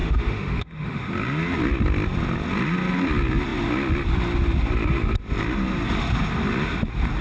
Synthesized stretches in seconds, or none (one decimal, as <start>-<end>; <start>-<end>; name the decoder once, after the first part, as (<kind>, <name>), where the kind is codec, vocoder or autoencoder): 0.0-1.1 (autoencoder, DAC-VAE)